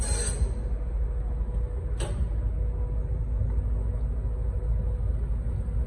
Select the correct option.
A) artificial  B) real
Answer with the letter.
B